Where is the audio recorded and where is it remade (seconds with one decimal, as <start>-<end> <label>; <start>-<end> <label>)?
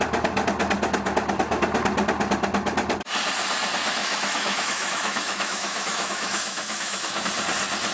0.0-4.0 recorded; 4.0-7.2 remade; 7.2-7.9 recorded